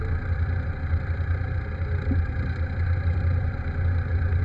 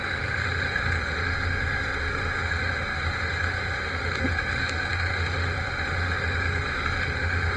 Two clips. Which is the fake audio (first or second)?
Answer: second